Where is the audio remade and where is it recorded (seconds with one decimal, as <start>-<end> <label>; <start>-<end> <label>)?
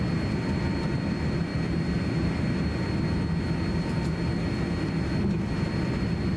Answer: 0.0-6.4 recorded